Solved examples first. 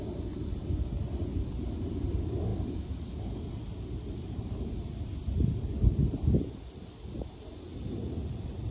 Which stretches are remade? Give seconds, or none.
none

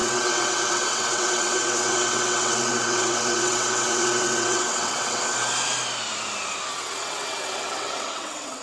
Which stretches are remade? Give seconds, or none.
0.0-5.2; 6.7-8.6